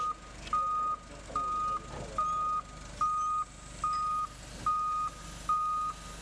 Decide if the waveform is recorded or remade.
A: recorded